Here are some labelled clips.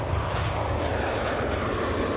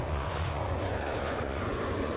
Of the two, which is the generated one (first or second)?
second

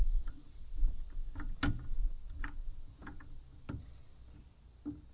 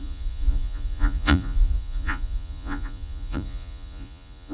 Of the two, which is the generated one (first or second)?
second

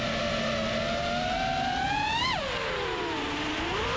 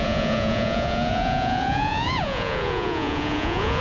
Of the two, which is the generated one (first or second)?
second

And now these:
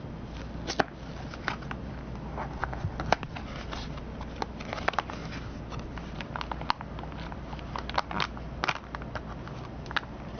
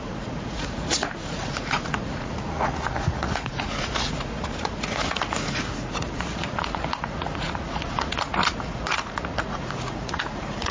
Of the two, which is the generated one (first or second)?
second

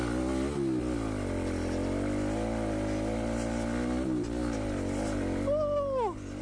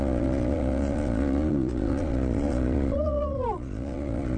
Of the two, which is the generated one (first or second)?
second